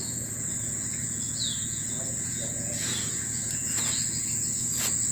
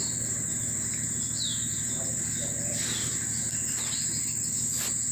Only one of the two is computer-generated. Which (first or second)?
first